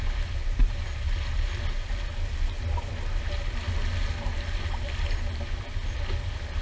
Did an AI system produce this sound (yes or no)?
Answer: no